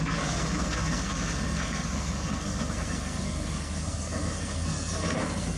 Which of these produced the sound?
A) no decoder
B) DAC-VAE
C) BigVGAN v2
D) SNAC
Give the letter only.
D